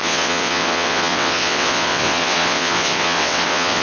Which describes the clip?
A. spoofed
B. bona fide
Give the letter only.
A